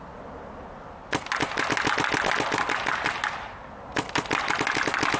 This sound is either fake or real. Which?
real